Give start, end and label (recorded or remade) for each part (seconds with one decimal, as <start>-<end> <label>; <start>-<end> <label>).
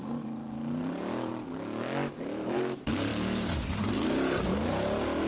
0.0-1.3 remade; 1.3-2.2 recorded; 2.2-4.5 remade; 4.5-5.3 recorded